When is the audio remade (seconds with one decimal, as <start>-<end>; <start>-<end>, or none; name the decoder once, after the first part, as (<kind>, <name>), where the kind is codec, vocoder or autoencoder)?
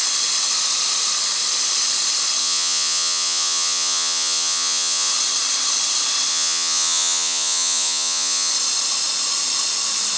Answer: 2.4-5.1 (vocoder, Vocos); 6.3-8.5